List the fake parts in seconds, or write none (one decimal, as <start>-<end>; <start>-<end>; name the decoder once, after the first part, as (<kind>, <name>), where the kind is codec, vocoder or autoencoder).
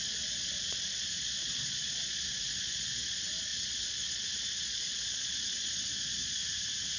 0.0-6.4 (vocoder, Vocos)